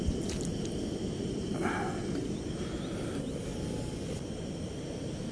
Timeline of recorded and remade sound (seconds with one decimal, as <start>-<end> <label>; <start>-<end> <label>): 0.0-5.3 recorded